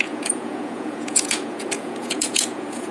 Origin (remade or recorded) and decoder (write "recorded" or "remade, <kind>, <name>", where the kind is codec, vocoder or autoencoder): remade, vocoder, Vocos